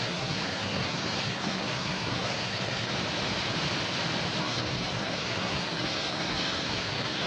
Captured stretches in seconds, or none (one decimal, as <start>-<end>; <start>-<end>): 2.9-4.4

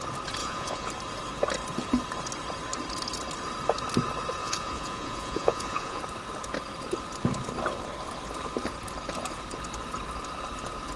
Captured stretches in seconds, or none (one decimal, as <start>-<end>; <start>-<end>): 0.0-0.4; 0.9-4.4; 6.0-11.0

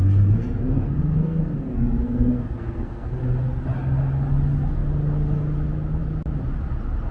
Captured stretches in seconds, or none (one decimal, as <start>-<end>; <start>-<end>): 3.2-7.1

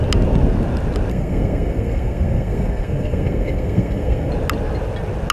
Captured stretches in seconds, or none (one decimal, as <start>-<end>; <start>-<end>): 0.0-1.1; 4.3-5.3